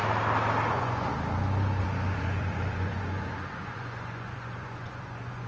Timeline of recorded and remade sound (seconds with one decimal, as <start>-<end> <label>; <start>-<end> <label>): 0.0-0.7 recorded; 0.7-1.1 remade; 1.1-1.8 recorded; 1.8-5.5 remade